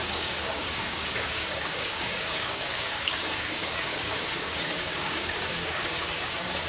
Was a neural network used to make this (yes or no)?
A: yes